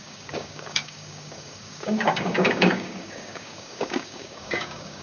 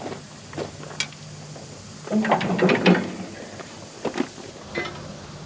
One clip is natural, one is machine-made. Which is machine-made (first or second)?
first